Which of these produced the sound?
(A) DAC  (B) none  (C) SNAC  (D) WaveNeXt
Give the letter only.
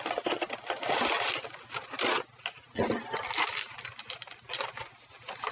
B